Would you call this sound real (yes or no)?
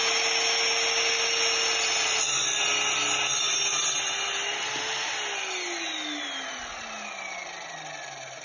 yes